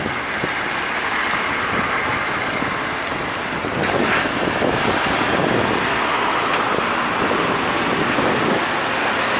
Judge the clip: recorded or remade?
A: recorded